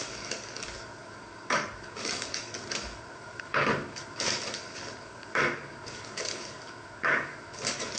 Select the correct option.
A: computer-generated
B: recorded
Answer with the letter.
A